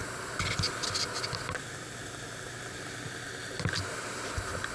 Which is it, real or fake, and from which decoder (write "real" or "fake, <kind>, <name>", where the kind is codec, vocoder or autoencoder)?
real